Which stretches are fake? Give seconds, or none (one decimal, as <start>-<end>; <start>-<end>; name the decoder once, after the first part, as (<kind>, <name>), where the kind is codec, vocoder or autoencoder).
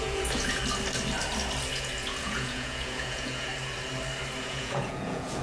0.0-0.6 (vocoder, Vocos); 1.7-3.5; 4.4-5.4